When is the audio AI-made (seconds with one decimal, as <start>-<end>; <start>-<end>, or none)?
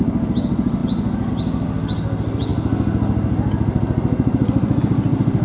none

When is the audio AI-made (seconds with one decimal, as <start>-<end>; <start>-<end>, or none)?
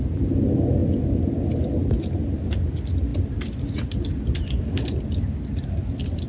none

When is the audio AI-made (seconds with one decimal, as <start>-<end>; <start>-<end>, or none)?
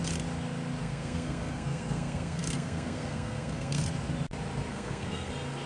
0.8-3.8; 4.7-5.3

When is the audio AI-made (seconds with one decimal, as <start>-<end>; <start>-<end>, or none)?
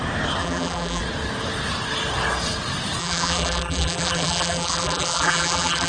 0.4-1.0; 3.0-5.9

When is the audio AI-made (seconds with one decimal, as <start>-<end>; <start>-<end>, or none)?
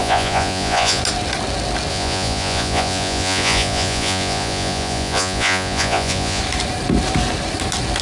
0.0-1.0; 1.9-6.4